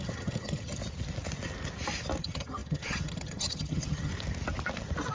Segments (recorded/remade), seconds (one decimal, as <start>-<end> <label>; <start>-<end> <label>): 0.0-0.8 remade; 0.8-2.2 recorded; 2.2-4.1 remade; 4.1-5.1 recorded